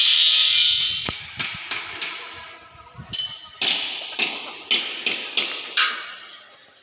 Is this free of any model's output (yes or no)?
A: yes